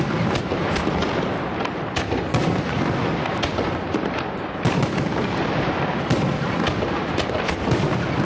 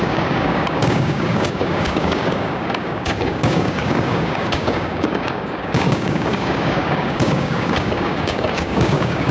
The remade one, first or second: second